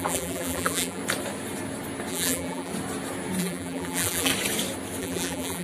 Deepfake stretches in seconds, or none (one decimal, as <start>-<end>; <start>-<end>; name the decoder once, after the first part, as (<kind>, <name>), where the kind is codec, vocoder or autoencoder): 0.0-1.0 (vocoder, BigVGAN v2); 2.1-2.7; 3.4-4.3; 5.0-5.6